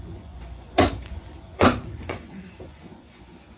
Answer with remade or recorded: remade